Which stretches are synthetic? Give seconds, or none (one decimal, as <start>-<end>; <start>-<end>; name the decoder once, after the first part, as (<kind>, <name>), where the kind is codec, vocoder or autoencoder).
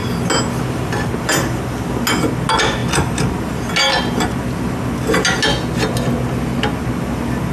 none